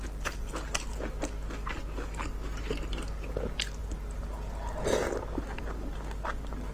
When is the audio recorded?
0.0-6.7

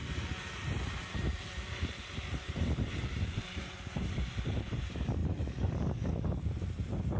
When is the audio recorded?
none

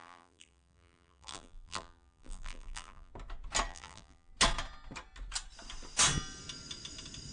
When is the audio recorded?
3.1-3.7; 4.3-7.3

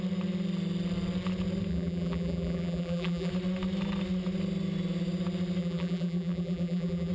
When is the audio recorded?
0.0-1.7; 3.3-5.6

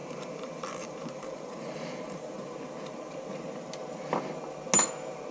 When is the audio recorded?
2.5-5.3

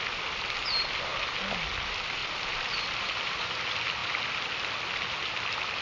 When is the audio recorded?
1.1-1.8; 4.0-5.3

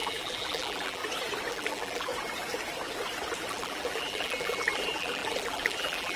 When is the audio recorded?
1.0-1.5; 2.1-3.5

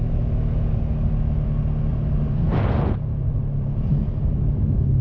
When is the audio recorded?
0.0-1.9; 4.2-5.0